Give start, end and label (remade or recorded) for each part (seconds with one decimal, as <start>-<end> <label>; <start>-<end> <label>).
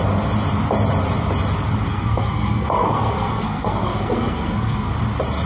0.0-1.9 recorded; 1.9-4.9 remade; 4.9-5.5 recorded